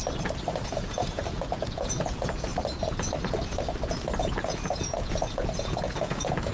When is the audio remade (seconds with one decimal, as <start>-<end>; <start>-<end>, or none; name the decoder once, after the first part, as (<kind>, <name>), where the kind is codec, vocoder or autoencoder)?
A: 0.8-2.5 (vocoder, Vocos); 4.2-6.5